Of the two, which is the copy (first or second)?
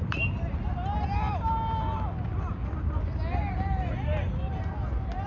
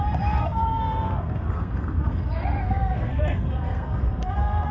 second